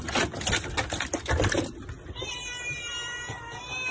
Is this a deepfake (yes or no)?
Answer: no